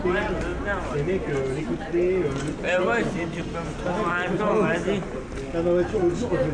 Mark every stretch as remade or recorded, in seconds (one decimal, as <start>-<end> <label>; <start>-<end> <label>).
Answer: 0.0-6.5 recorded